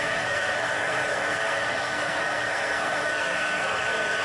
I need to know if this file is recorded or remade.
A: remade